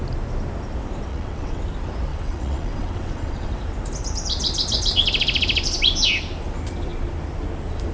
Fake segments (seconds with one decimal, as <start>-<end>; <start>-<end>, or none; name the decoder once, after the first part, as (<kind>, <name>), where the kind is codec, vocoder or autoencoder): 1.1-1.6 (vocoder, WaveNeXt); 2.1-3.6